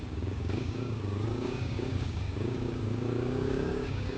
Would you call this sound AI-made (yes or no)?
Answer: yes